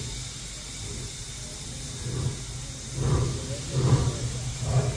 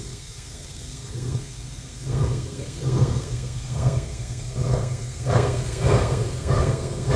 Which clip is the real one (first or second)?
first